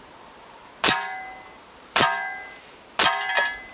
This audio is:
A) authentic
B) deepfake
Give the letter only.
A